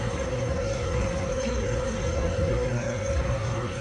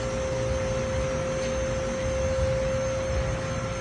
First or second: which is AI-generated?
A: first